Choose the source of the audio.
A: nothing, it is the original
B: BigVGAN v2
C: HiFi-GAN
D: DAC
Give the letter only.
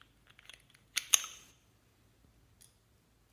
A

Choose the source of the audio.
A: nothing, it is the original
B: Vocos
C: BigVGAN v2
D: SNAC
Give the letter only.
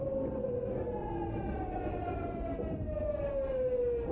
A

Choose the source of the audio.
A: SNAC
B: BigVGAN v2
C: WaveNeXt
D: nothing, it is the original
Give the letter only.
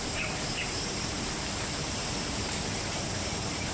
B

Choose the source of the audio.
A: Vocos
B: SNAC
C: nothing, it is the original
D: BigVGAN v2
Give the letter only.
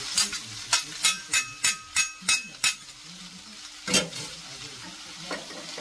C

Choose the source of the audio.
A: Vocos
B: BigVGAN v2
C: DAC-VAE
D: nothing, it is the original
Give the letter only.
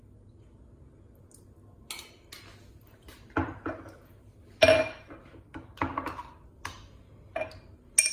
D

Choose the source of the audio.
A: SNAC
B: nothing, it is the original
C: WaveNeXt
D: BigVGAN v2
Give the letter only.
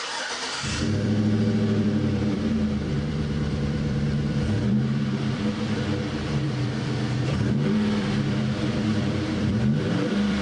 D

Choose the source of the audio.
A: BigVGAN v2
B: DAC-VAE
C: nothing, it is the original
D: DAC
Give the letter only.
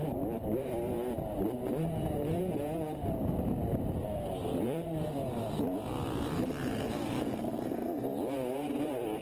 A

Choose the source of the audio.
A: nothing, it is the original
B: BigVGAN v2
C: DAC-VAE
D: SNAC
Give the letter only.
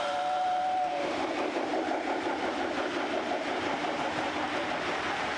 B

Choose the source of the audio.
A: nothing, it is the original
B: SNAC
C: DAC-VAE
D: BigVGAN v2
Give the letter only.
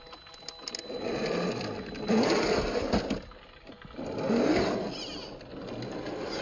A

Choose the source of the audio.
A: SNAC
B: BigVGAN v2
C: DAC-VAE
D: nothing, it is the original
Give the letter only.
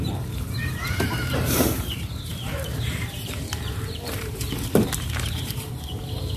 B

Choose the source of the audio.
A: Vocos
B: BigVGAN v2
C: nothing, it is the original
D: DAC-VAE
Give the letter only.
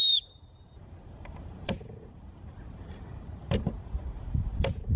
B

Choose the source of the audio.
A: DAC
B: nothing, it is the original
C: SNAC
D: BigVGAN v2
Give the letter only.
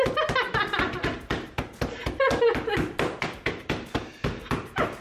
B